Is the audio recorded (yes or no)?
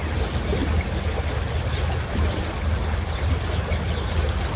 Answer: yes